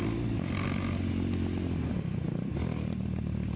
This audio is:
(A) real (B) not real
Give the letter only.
A